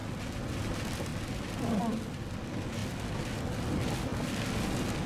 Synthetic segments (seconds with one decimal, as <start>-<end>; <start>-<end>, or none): none